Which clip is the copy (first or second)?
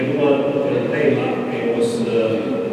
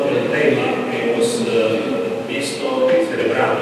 second